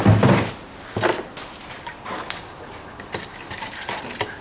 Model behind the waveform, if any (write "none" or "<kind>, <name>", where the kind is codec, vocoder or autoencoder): none